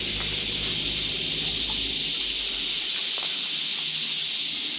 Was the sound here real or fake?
real